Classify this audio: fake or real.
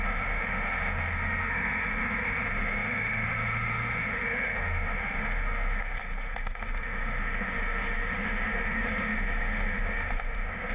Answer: fake